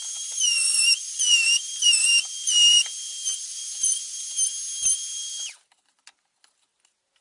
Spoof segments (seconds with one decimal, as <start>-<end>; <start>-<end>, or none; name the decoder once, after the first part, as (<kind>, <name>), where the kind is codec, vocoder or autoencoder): 0.0-4.3 (vocoder, BigVGAN v2); 5.1-6.6